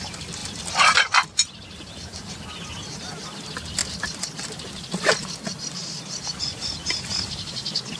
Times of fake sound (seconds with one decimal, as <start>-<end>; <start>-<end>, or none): none